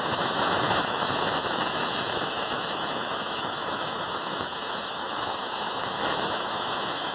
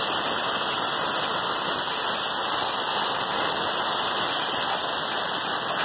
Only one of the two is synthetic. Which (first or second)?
first